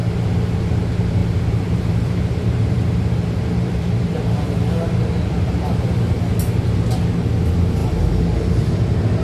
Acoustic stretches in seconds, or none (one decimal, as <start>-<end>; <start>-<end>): 0.0-1.2; 6.1-9.2